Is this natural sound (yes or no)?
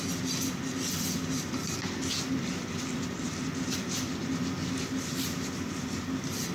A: yes